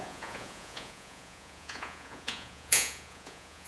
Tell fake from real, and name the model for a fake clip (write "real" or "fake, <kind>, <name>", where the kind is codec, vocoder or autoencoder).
fake, vocoder, Vocos